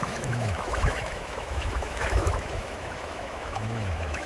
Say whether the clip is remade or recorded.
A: remade